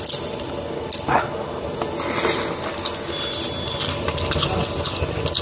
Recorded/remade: recorded